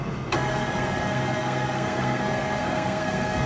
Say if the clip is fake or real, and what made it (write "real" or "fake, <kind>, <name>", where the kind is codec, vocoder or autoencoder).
fake, codec, SNAC